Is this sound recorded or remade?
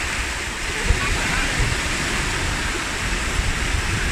recorded